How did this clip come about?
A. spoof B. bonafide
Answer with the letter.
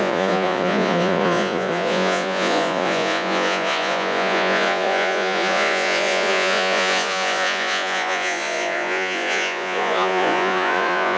A